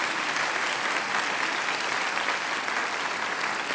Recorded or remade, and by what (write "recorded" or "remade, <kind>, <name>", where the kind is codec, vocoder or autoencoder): recorded